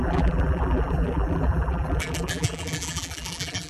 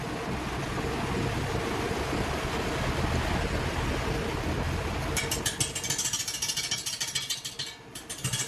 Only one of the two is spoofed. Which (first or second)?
first